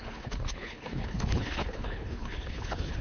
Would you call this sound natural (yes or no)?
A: no